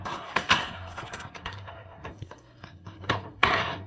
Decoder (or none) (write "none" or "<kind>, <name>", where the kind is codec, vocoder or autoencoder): codec, SNAC